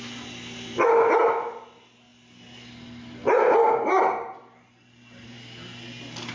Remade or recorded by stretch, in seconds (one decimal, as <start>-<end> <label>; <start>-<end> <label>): 0.0-6.3 recorded